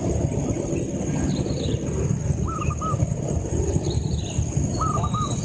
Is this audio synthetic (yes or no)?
no